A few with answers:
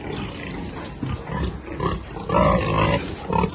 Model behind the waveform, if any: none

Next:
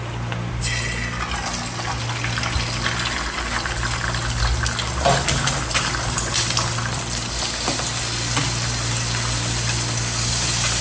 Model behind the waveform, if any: none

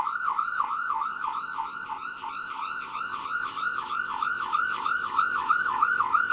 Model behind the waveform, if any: codec, ZipCodec